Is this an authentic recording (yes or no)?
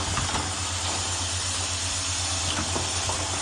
yes